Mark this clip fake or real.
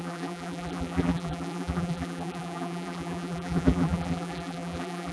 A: fake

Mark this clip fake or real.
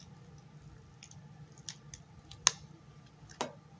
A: real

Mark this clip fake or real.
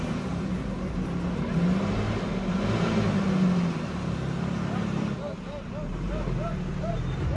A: real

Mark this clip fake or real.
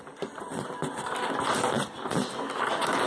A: real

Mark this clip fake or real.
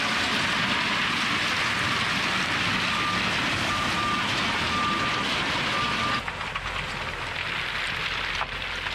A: real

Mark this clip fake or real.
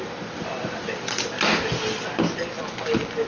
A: real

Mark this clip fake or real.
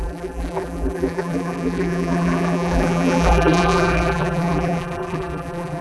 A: fake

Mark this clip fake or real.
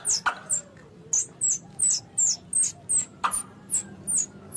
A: real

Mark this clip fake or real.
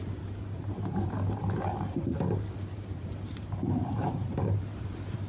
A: fake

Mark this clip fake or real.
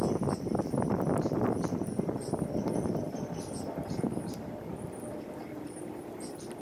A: fake